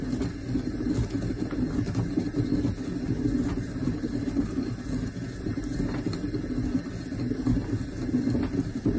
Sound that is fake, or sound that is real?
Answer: real